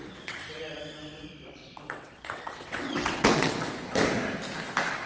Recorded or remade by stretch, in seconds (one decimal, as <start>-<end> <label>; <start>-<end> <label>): 0.0-0.6 remade; 0.6-1.6 recorded; 1.6-3.6 remade; 3.6-5.1 recorded